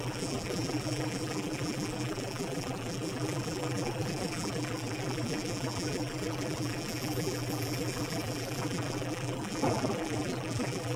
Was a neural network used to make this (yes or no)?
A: yes